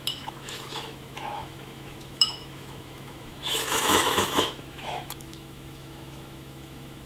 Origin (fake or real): fake